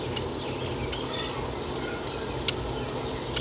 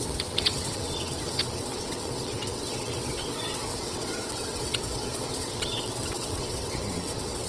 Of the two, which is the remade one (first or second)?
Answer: second